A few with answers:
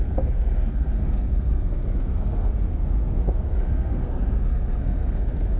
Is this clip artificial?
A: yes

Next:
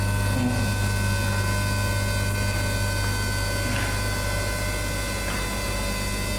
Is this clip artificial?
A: no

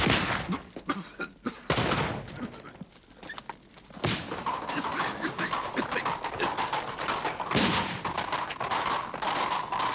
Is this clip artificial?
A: no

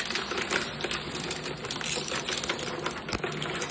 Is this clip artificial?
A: no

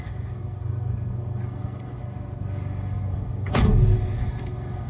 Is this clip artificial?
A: yes